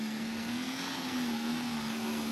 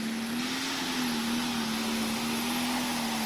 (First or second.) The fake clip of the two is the first